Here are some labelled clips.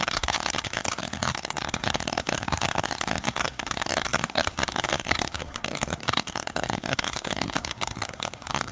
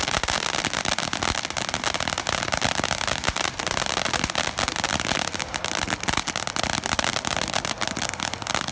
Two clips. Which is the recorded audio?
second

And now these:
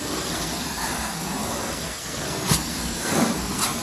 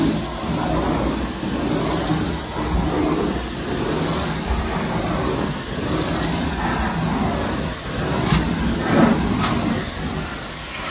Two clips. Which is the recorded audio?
second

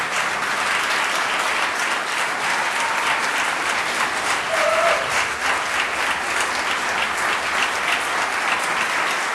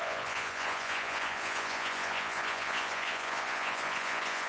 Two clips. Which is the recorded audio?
first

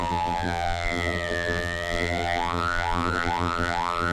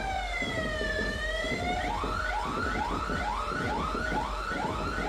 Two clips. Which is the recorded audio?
second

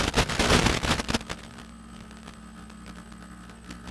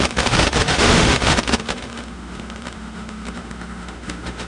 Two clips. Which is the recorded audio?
first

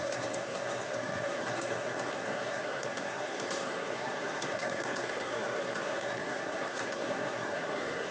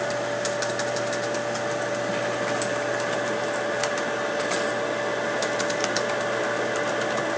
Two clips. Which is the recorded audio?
second